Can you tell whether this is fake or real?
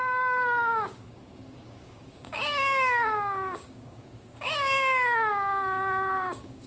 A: fake